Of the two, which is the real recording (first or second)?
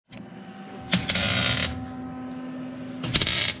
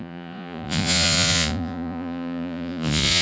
first